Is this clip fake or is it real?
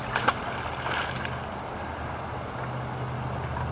real